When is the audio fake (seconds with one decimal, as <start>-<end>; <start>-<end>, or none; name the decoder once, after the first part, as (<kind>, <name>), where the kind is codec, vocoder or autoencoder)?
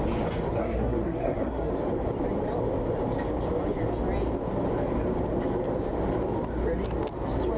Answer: 0.6-1.7 (codec, SNAC)